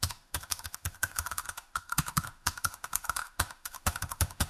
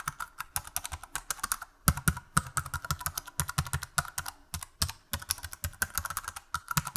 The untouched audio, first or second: second